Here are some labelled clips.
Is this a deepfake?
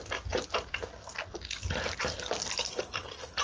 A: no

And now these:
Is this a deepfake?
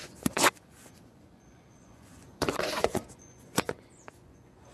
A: yes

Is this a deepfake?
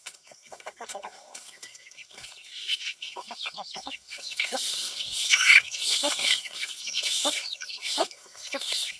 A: yes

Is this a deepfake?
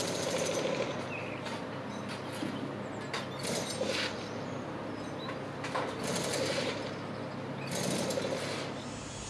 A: no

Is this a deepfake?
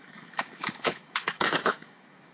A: yes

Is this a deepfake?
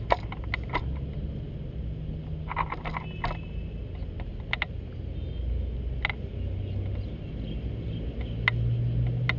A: no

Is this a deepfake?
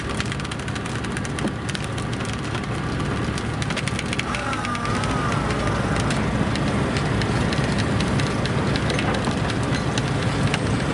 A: no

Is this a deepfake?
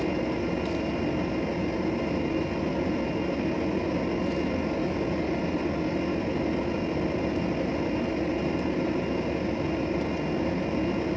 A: no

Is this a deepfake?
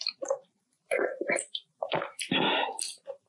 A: no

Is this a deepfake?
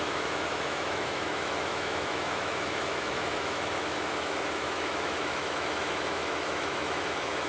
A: yes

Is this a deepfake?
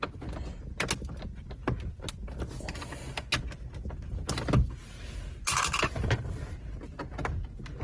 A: no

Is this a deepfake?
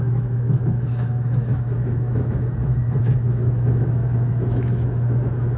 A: yes